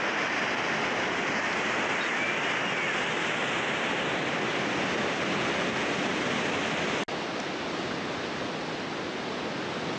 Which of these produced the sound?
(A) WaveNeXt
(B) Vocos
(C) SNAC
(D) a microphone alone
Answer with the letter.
D